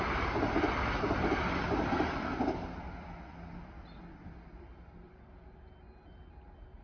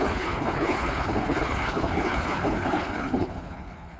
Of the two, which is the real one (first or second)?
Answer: first